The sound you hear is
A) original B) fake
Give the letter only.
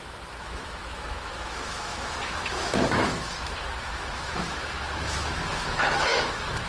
B